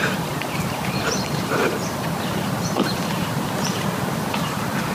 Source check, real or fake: fake